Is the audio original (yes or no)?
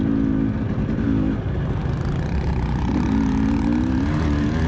yes